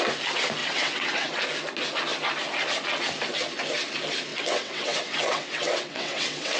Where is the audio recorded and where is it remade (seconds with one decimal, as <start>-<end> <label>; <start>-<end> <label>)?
0.0-0.6 recorded; 0.6-1.4 remade; 1.4-4.3 recorded; 4.3-6.6 remade